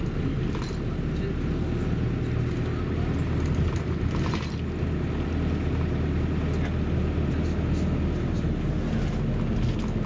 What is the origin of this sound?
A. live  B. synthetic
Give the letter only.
A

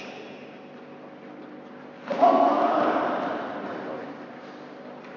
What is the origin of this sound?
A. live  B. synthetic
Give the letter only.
A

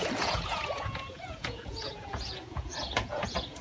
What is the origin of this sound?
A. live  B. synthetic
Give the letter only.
B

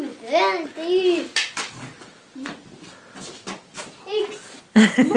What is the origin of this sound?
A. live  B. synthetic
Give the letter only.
A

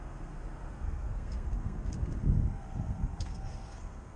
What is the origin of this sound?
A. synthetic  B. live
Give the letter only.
A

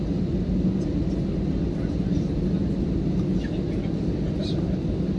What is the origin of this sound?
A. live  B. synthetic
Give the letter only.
A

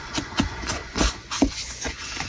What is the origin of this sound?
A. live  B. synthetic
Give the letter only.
B